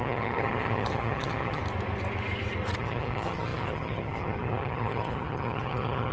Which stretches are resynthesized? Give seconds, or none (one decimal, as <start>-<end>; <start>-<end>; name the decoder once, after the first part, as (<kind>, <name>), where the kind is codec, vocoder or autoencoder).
0.0-1.6 (vocoder, HiFi-GAN); 2.8-6.1